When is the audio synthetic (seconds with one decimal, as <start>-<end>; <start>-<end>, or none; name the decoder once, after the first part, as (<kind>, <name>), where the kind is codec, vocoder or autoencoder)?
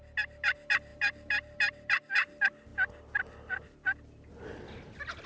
0.9-2.1 (vocoder, BigVGAN v2)